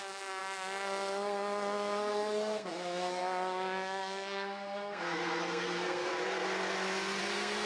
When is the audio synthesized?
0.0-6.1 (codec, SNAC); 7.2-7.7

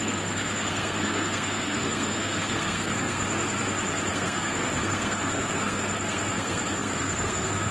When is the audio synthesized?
0.0-3.2 (codec, SNAC); 4.1-7.7